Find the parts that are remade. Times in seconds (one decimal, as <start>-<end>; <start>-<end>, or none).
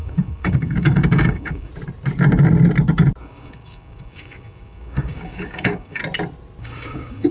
0.0-1.7; 3.2-6.0; 6.6-7.3